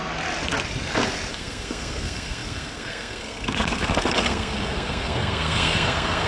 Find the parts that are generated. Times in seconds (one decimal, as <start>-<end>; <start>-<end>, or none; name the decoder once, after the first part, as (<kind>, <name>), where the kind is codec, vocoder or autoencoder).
1.3-6.3 (codec, SNAC)